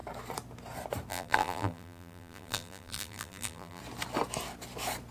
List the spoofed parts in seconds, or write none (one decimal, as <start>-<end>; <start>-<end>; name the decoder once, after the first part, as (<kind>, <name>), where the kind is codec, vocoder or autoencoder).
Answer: 1.1-3.8 (vocoder, BigVGAN v2)